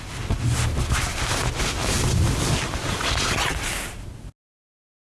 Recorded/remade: recorded